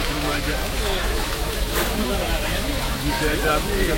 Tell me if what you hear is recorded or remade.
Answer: remade